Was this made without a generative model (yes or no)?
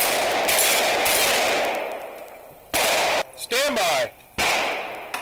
yes